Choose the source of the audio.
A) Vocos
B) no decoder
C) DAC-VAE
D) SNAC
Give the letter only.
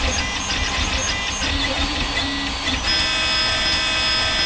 B